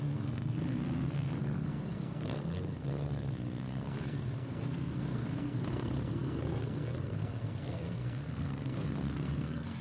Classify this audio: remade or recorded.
remade